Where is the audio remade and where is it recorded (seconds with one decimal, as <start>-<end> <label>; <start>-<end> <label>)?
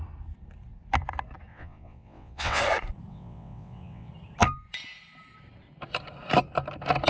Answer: 0.0-1.5 recorded; 1.5-2.6 remade; 2.6-3.1 recorded; 3.1-4.1 remade; 4.1-7.1 recorded